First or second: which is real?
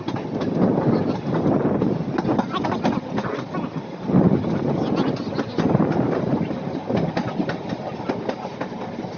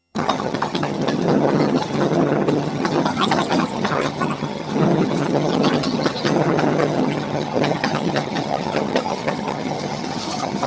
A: first